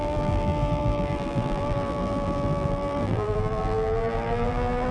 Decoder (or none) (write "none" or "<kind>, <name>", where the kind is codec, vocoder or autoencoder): vocoder, BigVGAN v2